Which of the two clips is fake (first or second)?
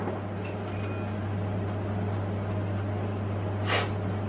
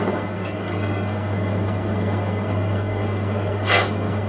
second